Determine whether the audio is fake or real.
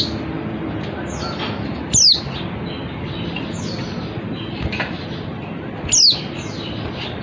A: real